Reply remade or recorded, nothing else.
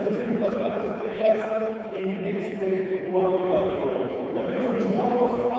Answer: remade